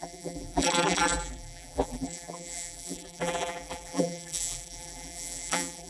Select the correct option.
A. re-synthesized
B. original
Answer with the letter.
A